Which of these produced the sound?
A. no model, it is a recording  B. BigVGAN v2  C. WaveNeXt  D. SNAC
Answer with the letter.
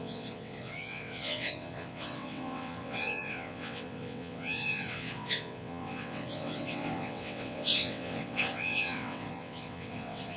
C